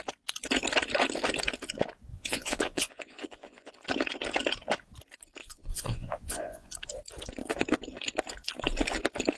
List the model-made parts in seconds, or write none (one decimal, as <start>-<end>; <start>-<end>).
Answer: 2.1-3.7; 5.4-6.7